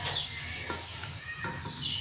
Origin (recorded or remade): recorded